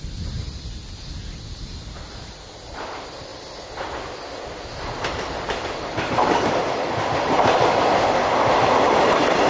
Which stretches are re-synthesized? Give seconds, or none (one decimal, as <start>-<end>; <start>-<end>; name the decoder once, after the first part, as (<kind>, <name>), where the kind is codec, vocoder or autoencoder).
none